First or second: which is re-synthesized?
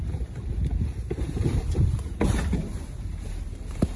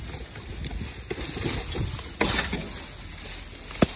first